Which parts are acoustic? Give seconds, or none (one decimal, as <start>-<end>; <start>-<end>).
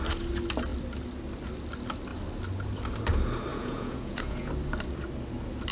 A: 0.0-3.5; 4.5-5.7